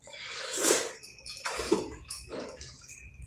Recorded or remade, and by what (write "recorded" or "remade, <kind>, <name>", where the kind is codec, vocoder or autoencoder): remade, codec, DAC